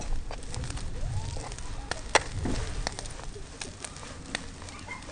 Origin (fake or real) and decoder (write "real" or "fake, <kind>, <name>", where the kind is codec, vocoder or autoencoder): real